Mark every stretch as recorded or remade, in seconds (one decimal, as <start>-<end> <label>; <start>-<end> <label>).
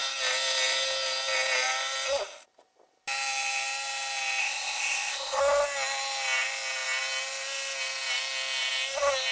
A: 0.0-4.4 recorded; 4.4-5.4 remade; 5.4-9.3 recorded